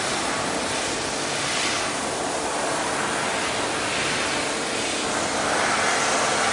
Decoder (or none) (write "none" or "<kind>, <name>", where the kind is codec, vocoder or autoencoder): none